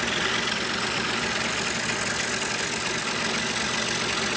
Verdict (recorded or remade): recorded